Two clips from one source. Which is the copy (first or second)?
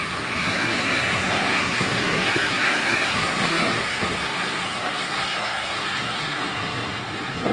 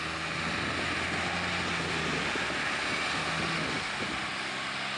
first